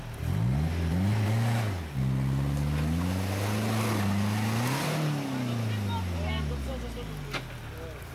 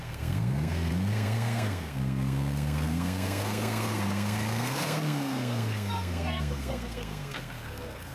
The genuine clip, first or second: first